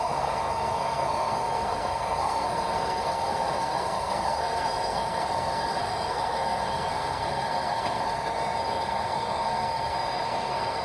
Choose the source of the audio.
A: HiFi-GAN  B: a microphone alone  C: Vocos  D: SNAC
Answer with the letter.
D